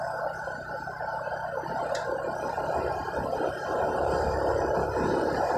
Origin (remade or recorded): remade